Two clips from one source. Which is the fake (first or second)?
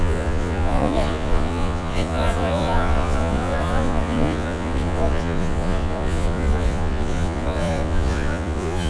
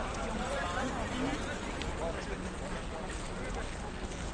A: first